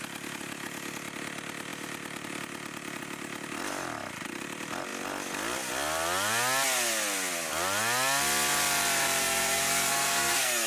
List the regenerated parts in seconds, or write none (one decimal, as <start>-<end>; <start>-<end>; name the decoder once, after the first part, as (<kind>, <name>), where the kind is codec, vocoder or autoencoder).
9.2-10.7 (codec, SNAC)